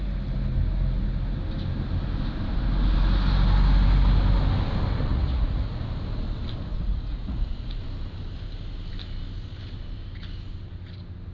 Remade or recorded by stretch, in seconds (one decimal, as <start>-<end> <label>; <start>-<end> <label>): 0.0-5.1 recorded; 5.1-5.8 remade; 5.8-6.7 recorded; 6.7-7.8 remade; 7.8-11.3 recorded